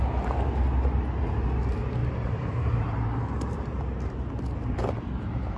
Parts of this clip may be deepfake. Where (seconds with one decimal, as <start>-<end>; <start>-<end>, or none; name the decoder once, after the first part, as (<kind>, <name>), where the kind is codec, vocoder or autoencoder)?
2.0-4.1 (vocoder, BigVGAN v2)